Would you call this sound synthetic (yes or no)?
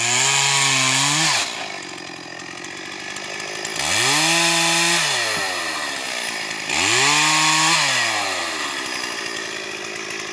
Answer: no